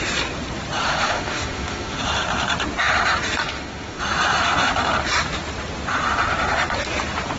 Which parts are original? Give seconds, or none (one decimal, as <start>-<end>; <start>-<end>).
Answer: 0.0-0.8; 2.0-3.4; 4.0-7.4